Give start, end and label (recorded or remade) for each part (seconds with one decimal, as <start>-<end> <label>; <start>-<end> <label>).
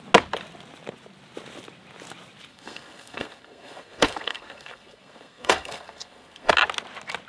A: 0.0-2.5 recorded; 2.5-6.5 remade; 6.5-7.3 recorded